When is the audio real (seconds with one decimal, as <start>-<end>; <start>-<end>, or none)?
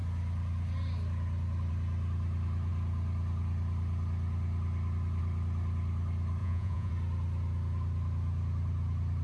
0.0-6.4; 6.9-9.2